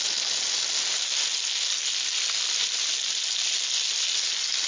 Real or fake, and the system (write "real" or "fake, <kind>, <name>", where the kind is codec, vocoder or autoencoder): real